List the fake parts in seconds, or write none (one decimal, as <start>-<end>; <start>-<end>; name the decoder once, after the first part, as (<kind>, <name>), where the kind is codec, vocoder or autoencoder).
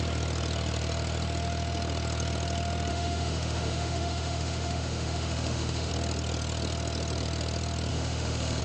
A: 2.9-5.9 (autoencoder, DAC-VAE); 7.9-8.6